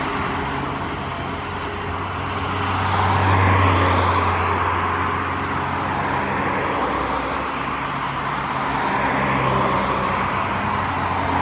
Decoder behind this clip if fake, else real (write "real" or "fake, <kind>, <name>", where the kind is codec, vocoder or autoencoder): real